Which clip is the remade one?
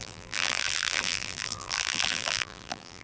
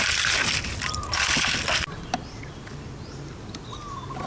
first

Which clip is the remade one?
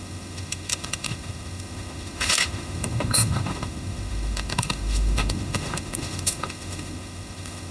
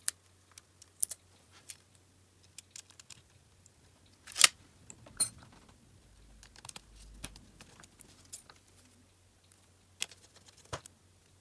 first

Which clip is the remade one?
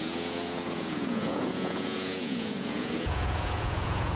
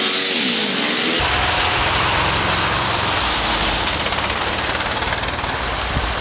first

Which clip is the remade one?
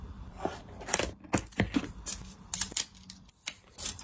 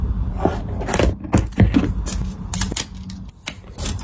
first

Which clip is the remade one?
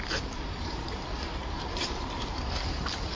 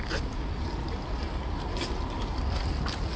first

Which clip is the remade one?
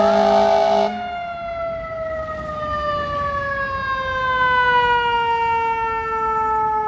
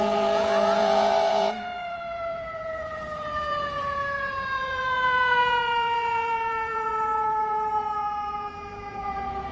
second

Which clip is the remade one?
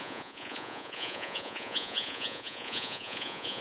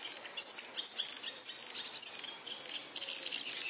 first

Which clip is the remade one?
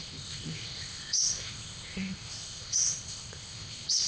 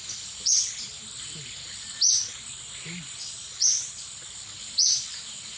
first